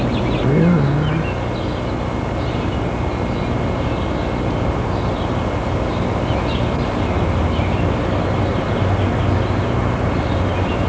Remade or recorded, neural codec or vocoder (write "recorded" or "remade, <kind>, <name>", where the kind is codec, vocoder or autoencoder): recorded